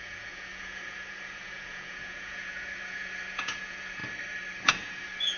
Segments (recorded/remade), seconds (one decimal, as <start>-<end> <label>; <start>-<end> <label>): 0.0-4.0 remade; 4.0-4.7 recorded; 4.7-5.4 remade